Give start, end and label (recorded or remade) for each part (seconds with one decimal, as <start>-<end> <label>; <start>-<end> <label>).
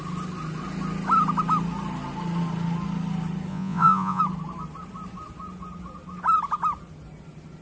0.0-3.5 recorded; 3.5-4.2 remade; 4.2-7.6 recorded